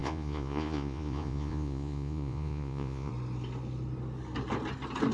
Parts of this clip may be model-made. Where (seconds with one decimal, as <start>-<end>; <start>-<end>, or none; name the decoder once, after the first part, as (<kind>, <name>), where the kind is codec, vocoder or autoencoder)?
0.0-3.1 (vocoder, Vocos)